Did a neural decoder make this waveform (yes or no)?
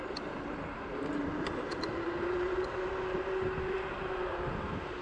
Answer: yes